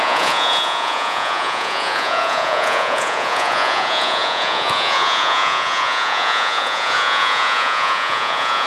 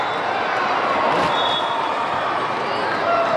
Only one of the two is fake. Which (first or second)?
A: first